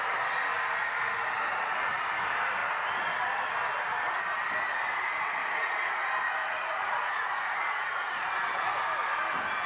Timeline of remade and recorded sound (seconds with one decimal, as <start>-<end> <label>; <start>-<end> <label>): 0.0-5.4 recorded; 5.4-5.9 remade; 5.9-6.4 recorded; 6.4-8.3 remade; 8.3-9.7 recorded